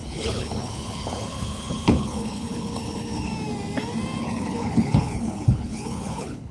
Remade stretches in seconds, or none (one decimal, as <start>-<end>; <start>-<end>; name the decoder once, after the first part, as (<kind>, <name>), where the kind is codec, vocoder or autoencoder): 0.0-3.3 (codec, HILCodec); 4.2-6.5